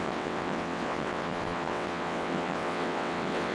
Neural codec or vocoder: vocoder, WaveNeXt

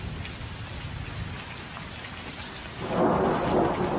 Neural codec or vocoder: none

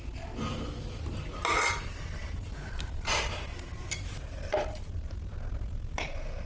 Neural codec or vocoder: none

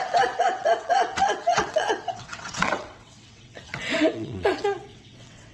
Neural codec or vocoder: vocoder, WaveNeXt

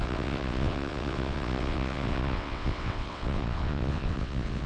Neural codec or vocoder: vocoder, WaveNeXt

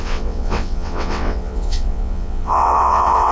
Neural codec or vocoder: vocoder, WaveNeXt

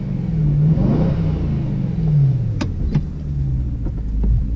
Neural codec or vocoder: none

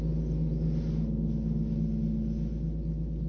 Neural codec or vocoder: none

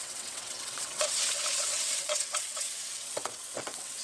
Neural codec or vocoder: vocoder, WaveNeXt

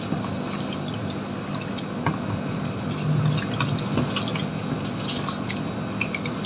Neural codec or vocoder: none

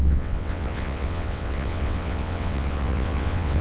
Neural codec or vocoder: vocoder, WaveNeXt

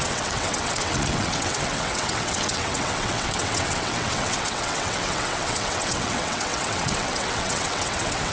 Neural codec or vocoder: vocoder, WaveNeXt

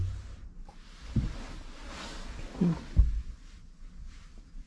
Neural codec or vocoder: none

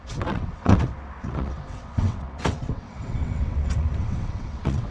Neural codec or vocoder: vocoder, WaveNeXt